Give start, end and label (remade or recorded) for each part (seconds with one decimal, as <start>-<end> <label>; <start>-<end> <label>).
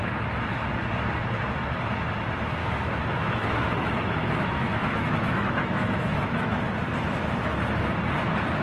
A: 0.0-2.6 recorded; 2.6-6.6 remade; 6.6-8.6 recorded